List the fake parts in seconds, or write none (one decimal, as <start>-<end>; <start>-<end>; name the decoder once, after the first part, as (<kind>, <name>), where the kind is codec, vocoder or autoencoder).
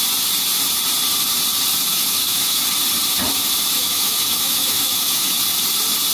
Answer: 1.9-2.6 (autoencoder, DAC-VAE); 3.8-5.4